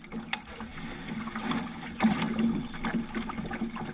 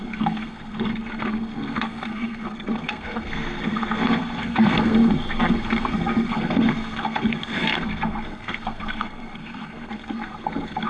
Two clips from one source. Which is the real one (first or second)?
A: first